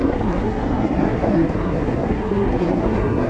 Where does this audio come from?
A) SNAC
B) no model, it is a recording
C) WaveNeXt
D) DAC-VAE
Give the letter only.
A